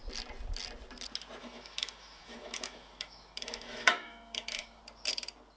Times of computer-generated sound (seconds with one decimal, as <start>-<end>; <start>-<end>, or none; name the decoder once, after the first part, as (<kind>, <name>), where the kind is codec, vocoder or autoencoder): 1.4-4.8 (autoencoder, DAC-VAE)